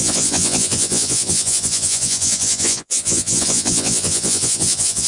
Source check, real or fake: fake